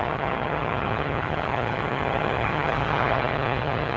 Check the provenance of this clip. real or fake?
fake